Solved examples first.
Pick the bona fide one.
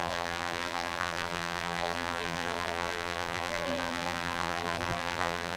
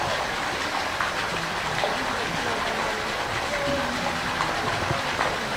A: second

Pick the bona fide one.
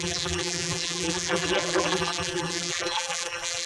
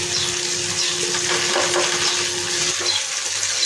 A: second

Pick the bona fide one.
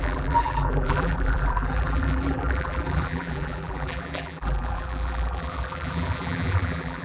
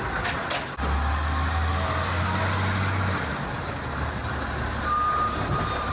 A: second